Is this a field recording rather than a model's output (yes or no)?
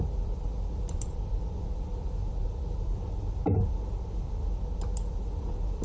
yes